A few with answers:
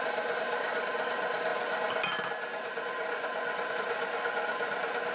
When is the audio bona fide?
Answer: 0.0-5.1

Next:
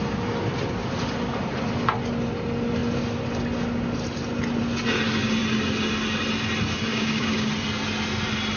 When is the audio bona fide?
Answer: 0.0-6.9; 7.5-8.6

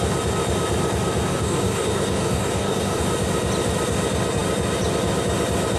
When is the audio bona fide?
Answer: 0.0-1.3; 3.0-5.8